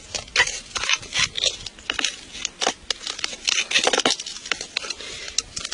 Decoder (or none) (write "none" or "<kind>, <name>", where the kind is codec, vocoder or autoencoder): none